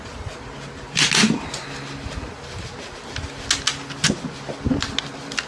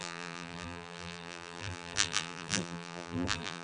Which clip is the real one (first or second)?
first